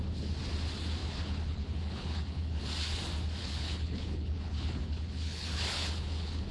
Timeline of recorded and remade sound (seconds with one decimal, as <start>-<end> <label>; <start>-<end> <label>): 0.0-1.0 recorded; 1.0-2.7 remade; 2.7-3.4 recorded; 3.4-6.5 remade